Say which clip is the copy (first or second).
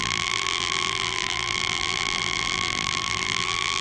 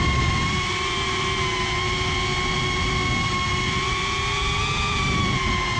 first